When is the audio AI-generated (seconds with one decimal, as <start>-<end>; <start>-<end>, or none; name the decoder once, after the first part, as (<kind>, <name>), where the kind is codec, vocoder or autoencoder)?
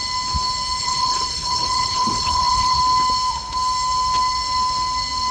0.8-2.8 (codec, HILCodec)